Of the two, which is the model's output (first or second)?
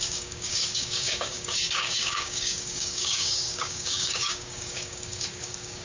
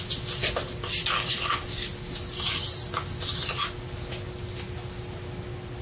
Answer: first